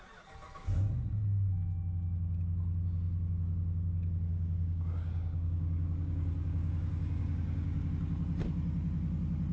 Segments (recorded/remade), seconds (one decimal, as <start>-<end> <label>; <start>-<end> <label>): 0.0-4.3 recorded; 4.3-7.9 remade; 7.9-9.5 recorded